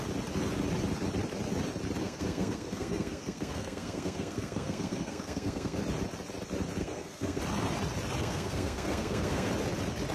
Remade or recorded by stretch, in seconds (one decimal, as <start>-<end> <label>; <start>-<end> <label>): 0.0-2.0 recorded; 2.0-5.8 remade; 5.8-6.8 recorded; 6.8-7.4 remade; 7.4-8.2 recorded; 8.2-9.5 remade; 9.5-10.1 recorded